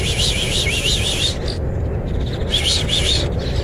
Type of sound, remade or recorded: recorded